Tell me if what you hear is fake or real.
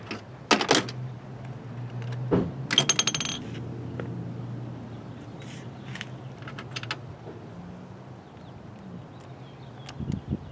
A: real